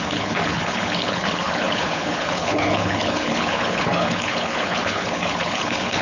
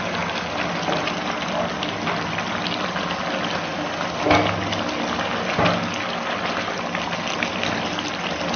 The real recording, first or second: second